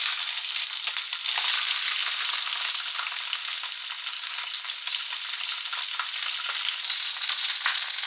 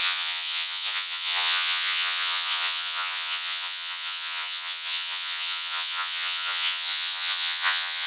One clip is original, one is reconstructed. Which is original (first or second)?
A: first